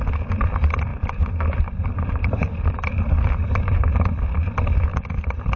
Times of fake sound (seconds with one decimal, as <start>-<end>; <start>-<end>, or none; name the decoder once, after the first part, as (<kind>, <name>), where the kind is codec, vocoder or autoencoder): 0.9-4.1 (vocoder, BigVGAN v2)